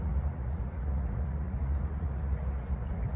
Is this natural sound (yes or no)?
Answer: no